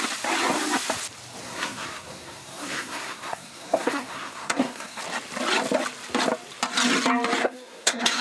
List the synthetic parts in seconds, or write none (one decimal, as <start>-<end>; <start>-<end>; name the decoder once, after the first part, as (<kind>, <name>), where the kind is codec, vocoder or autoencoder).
1.4-5.0 (codec, SNAC); 7.4-8.2